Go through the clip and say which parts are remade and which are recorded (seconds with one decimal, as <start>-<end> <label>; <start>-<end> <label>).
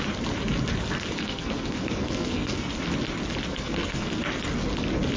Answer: 0.0-1.2 recorded; 1.2-2.7 remade; 2.7-3.5 recorded; 3.5-4.2 remade; 4.2-5.2 recorded